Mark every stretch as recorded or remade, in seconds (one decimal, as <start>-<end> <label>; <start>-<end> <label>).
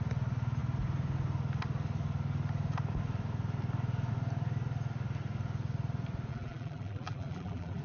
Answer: 0.0-6.3 recorded; 6.3-7.8 remade